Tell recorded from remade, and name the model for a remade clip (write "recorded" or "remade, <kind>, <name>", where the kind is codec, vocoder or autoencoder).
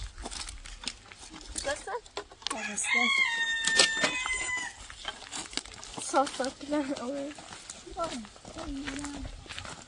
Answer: recorded